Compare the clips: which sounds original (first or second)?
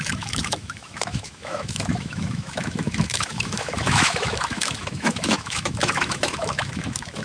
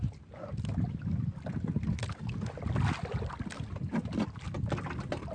second